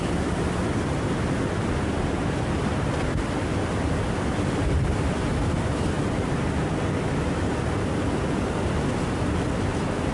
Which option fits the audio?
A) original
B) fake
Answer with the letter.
A